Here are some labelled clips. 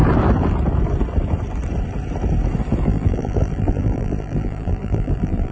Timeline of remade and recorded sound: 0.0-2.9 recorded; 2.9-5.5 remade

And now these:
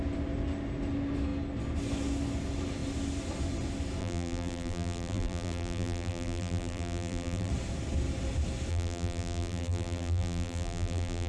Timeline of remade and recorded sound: 0.0-4.0 recorded; 4.0-7.5 remade; 7.5-8.7 recorded; 8.7-11.3 remade

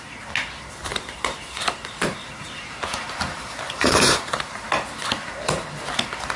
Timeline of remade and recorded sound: 0.0-0.9 recorded; 0.9-4.7 remade; 4.7-6.4 recorded

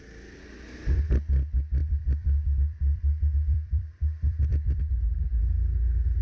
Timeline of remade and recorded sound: 0.0-1.8 recorded; 1.8-4.8 remade; 4.8-6.2 recorded

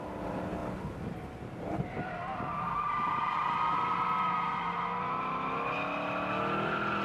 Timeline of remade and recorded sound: 0.0-7.0 recorded